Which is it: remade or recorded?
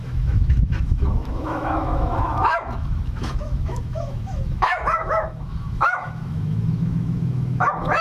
remade